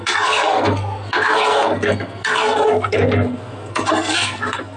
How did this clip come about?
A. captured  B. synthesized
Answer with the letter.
B